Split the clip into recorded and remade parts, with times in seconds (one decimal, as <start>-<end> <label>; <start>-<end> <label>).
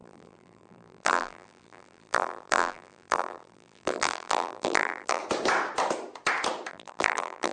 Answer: 0.0-5.2 remade; 5.2-6.7 recorded; 6.7-7.5 remade